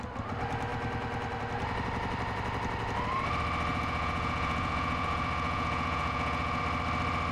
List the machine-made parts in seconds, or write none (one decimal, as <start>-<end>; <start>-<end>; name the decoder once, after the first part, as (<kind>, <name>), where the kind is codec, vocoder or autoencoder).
3.7-6.6 (vocoder, Vocos)